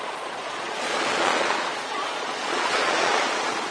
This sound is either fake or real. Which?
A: fake